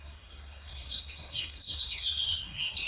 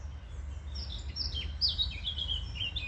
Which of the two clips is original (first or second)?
second